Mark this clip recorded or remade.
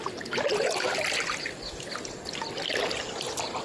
recorded